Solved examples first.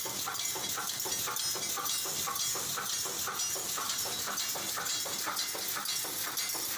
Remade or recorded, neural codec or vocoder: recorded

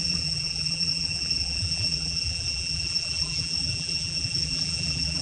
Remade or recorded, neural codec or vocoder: remade, vocoder, BigVGAN v2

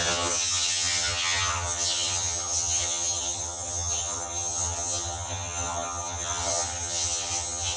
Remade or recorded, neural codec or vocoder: remade, vocoder, HiFi-GAN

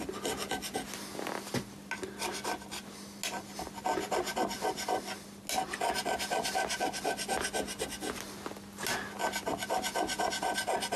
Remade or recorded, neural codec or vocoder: recorded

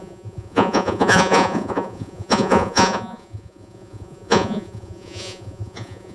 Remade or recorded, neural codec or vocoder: remade, vocoder, Vocos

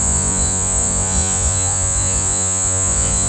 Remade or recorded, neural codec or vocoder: remade, vocoder, Vocos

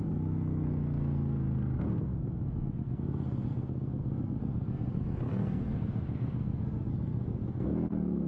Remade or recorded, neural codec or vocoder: remade, codec, SNAC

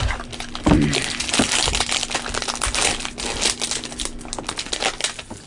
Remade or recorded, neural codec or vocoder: recorded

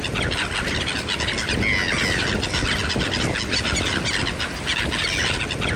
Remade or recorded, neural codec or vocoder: recorded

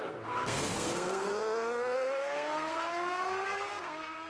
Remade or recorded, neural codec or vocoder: remade, codec, SNAC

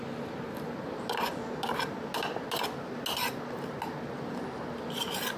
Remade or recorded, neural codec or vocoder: recorded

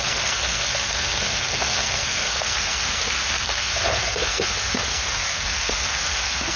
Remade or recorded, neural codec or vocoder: remade, codec, SNAC